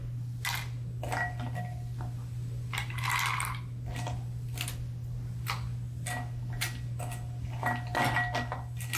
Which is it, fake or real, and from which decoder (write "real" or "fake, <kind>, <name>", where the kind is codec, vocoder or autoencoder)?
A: real